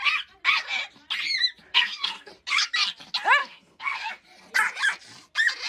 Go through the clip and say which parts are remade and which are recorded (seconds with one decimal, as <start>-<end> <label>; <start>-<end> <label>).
0.0-1.7 recorded; 1.7-2.3 remade; 2.3-3.4 recorded; 3.4-4.1 remade; 4.1-5.7 recorded